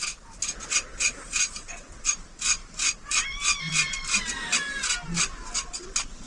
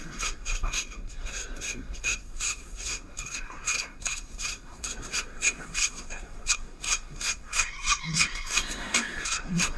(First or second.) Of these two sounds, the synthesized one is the second